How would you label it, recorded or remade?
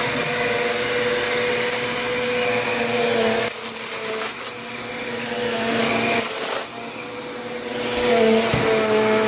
recorded